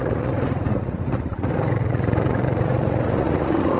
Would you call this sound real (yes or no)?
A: no